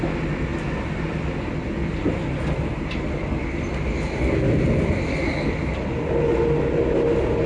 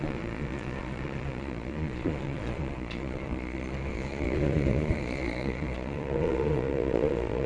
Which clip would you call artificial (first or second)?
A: second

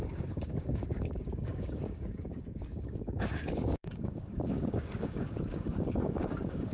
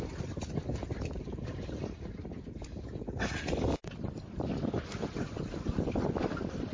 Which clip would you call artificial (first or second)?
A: first